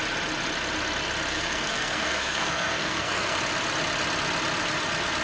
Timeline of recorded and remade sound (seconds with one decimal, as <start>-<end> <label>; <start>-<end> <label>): 0.0-1.3 recorded; 1.3-3.4 remade; 3.4-5.2 recorded